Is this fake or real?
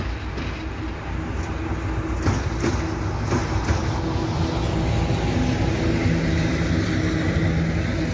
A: real